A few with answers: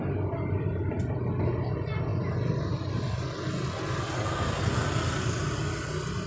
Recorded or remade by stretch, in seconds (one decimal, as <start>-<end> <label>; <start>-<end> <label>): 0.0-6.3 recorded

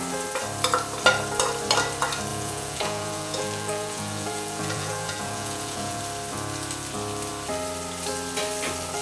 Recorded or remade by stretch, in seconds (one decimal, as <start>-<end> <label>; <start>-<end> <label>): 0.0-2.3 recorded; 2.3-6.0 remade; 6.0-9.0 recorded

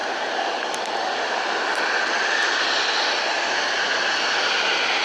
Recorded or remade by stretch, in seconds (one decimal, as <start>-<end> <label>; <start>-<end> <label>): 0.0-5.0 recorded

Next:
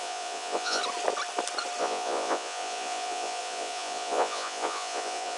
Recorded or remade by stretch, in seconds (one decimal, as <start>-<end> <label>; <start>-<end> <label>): 0.0-0.8 remade; 0.8-1.8 recorded; 1.8-5.4 remade

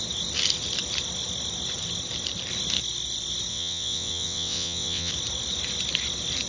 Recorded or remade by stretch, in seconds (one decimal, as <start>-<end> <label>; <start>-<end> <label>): 0.0-3.5 recorded; 3.5-5.1 remade; 5.1-6.5 recorded